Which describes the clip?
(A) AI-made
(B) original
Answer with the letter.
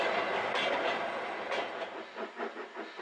B